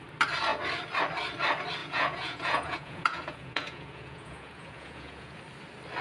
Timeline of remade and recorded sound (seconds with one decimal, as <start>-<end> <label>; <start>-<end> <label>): 0.0-1.8 recorded; 1.8-5.4 remade; 5.4-6.0 recorded